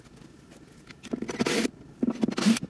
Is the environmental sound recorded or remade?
recorded